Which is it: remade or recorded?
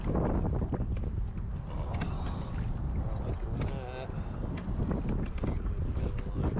recorded